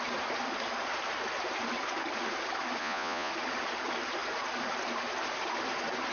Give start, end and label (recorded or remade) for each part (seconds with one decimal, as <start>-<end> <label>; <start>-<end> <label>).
0.0-2.8 recorded; 2.8-3.3 remade; 3.3-6.1 recorded